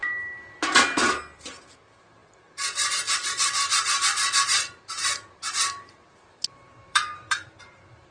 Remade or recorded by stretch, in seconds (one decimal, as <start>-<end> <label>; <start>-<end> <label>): 0.0-1.4 recorded; 1.4-8.1 remade